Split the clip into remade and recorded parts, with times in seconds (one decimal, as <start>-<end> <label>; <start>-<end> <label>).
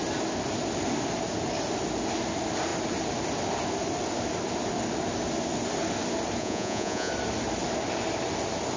0.0-6.4 recorded; 6.4-7.1 remade; 7.1-8.8 recorded